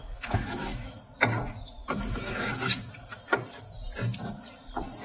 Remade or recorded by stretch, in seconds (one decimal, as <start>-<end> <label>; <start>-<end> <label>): 0.0-1.0 remade; 1.0-1.8 recorded; 1.8-2.5 remade; 2.5-5.0 recorded